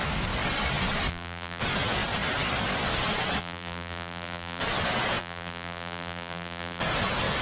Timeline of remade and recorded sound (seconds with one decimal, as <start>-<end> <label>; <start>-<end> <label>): 0.0-1.1 recorded; 1.1-1.6 remade; 1.6-3.4 recorded; 3.4-4.6 remade; 4.6-5.2 recorded; 5.2-6.8 remade; 6.8-7.4 recorded